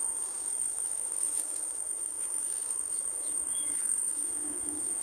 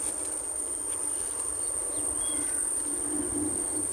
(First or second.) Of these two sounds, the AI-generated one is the first